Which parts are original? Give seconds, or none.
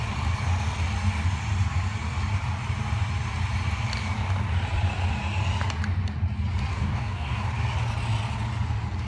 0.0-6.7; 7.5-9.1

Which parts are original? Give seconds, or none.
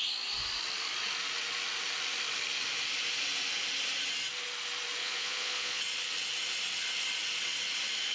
0.0-5.0; 5.8-8.1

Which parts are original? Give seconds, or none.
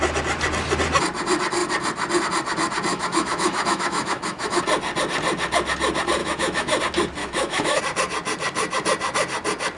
0.0-2.9; 4.6-6.2; 6.8-7.2; 7.8-9.8